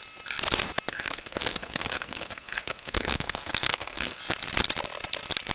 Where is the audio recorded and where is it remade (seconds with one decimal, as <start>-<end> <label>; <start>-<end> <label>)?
0.0-0.9 recorded; 0.9-4.2 remade; 4.2-5.5 recorded